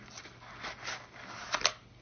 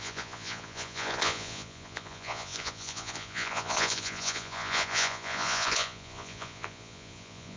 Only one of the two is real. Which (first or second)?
first